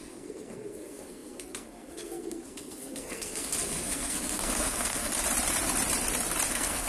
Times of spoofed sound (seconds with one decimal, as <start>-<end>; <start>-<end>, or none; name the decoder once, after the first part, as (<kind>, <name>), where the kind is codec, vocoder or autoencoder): 0.0-5.1 (codec, SNAC); 6.5-6.9